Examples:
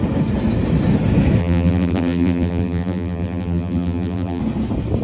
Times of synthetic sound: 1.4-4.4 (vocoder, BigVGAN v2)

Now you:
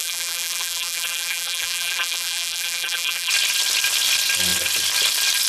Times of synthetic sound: 0.0-3.3 (vocoder, BigVGAN v2)

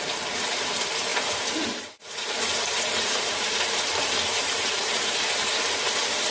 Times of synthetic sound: 0.0-6.3 (vocoder, BigVGAN v2)